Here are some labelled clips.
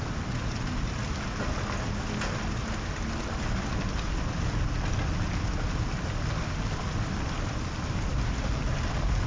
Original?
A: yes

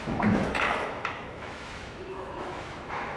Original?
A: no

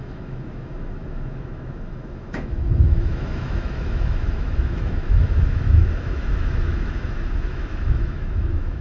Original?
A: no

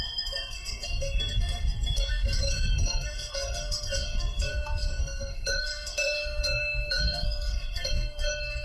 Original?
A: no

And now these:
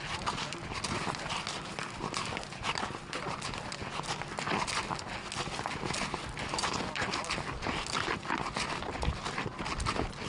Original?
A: yes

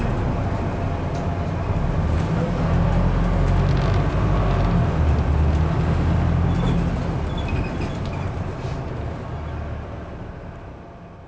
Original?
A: yes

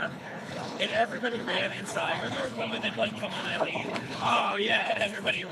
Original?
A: no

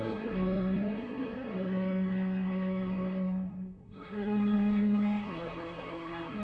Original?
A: no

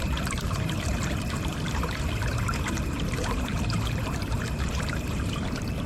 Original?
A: no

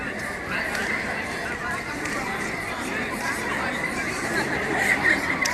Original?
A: no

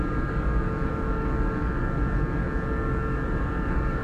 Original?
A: no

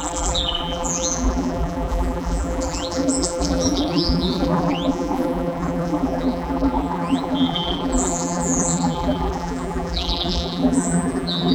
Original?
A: no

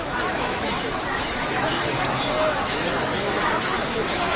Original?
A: no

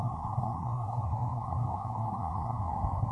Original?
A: no